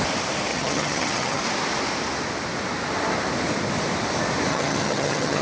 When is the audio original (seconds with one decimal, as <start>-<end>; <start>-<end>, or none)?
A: 0.0-0.5; 1.4-4.5